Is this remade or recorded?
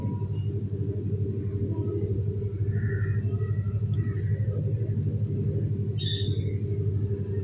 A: recorded